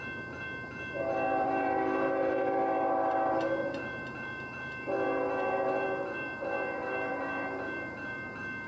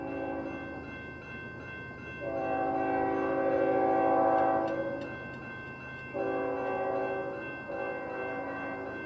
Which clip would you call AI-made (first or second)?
first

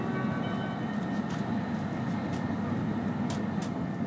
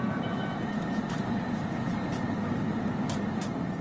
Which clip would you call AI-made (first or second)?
second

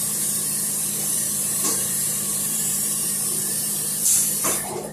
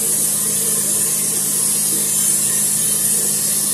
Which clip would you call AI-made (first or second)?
first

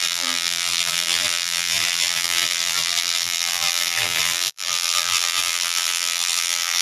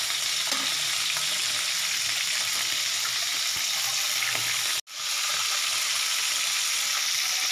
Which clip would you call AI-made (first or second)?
first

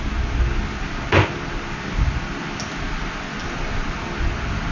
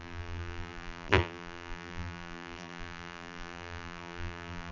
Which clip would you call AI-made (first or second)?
second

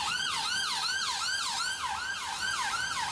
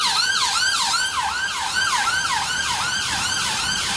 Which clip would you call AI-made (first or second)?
second